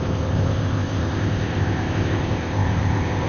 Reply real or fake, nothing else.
fake